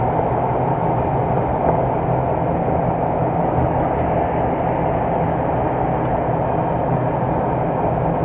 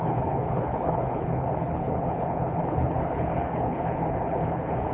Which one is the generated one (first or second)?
second